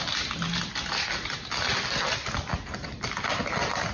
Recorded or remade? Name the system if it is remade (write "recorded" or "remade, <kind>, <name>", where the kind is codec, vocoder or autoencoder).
recorded